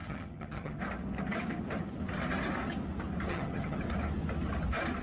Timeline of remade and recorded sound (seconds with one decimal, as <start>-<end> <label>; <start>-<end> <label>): 0.0-0.8 remade; 0.8-3.3 recorded; 3.3-3.8 remade; 3.8-5.0 recorded